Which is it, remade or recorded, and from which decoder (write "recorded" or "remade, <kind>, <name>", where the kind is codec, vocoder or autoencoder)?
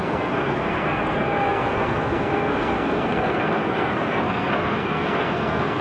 remade, codec, SNAC